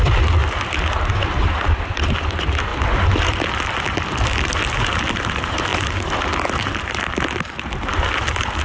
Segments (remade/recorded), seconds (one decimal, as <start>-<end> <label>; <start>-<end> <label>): 0.0-8.6 recorded